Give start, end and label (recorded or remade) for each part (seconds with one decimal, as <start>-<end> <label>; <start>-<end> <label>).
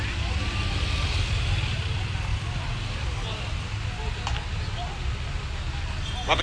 0.0-6.4 recorded